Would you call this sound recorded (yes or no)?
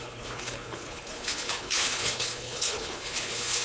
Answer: no